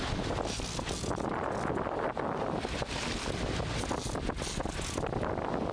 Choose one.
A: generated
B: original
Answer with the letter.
B